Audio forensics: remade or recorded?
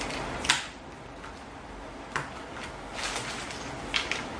recorded